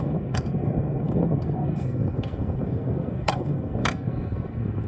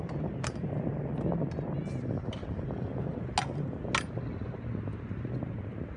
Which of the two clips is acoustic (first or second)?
second